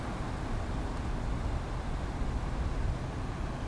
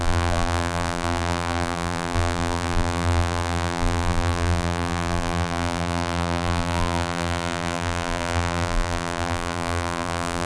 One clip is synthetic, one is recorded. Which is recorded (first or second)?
first